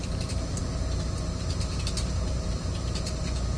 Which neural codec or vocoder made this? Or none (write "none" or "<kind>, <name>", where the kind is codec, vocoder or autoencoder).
vocoder, BigVGAN v2